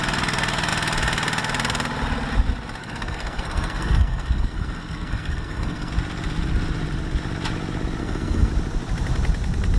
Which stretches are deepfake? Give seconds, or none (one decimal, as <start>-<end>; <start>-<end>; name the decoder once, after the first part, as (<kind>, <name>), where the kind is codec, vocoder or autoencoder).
2.8-5.9 (codec, SNAC); 8.0-8.5